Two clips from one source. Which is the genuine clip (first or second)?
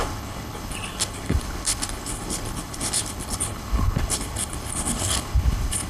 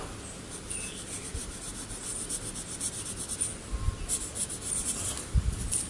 second